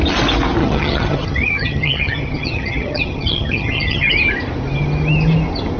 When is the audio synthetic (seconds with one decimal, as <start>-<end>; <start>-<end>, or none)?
0.6-4.1

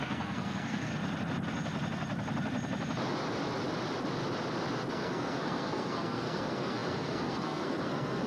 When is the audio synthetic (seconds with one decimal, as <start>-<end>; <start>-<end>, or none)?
0.0-0.9; 4.9-8.3

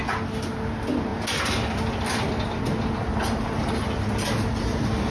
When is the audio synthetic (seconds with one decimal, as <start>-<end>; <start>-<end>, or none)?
none

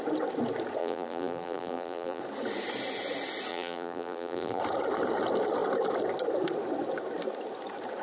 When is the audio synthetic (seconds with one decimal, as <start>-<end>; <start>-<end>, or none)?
0.8-2.2; 3.5-4.6

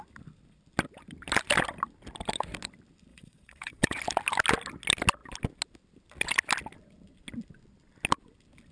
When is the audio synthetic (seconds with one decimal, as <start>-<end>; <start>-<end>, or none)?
3.1-4.0

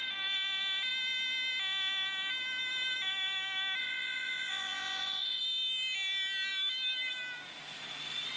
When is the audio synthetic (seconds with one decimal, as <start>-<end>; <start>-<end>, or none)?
3.8-5.4

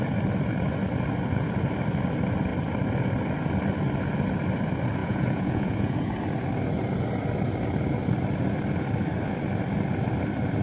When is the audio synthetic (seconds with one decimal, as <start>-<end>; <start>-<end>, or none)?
5.0-6.1